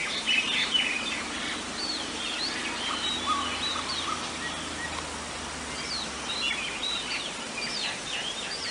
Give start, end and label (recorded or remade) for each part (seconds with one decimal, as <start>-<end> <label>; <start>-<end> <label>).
0.0-2.6 remade; 2.6-6.5 recorded; 6.5-8.7 remade